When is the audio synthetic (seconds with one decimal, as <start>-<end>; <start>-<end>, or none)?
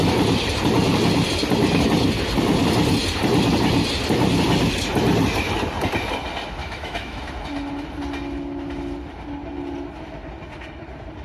6.6-7.2